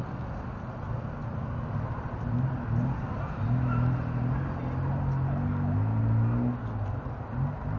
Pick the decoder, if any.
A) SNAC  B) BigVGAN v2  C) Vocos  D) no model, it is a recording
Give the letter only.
D